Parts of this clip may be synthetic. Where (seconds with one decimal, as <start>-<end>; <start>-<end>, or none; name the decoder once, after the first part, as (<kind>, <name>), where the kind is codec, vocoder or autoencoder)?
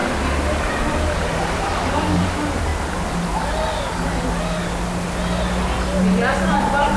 1.4-2.7 (vocoder, BigVGAN v2); 6.5-7.0